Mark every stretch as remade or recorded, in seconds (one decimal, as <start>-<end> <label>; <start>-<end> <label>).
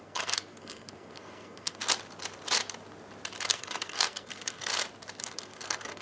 0.0-1.8 remade; 1.8-3.5 recorded; 3.5-4.7 remade; 4.7-5.2 recorded; 5.2-6.0 remade